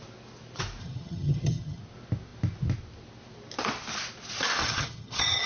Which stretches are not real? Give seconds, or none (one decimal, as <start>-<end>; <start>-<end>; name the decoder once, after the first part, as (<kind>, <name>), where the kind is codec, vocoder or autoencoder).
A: 0.8-1.8 (vocoder, HiFi-GAN); 4.6-5.5